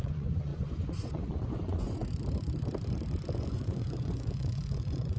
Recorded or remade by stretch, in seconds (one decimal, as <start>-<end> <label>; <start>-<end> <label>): 0.0-2.0 remade; 2.0-3.3 recorded; 3.3-5.2 remade